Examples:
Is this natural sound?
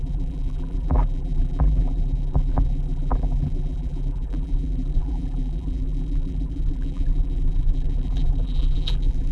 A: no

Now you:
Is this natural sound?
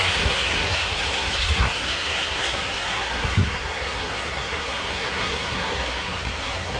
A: no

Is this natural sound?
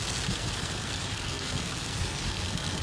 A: no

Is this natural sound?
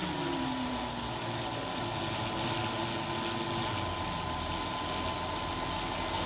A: yes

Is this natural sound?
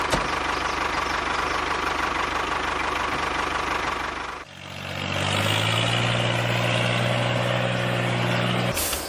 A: yes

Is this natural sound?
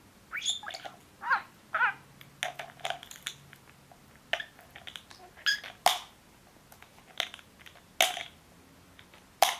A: yes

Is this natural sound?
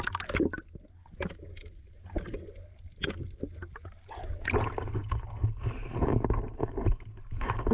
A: yes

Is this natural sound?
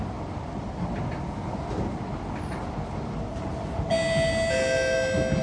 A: yes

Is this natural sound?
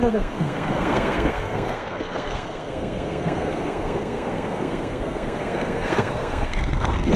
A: no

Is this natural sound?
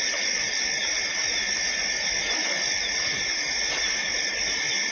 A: yes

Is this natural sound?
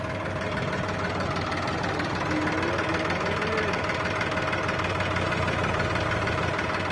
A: yes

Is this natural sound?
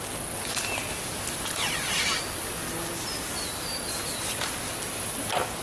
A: yes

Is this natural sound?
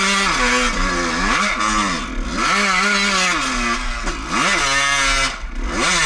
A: yes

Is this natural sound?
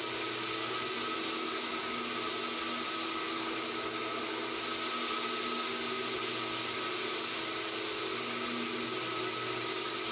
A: yes